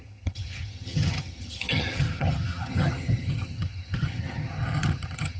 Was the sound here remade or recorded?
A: remade